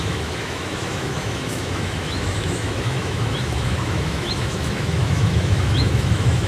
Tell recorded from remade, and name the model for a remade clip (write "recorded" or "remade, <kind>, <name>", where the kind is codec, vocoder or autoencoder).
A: remade, autoencoder, DAC-VAE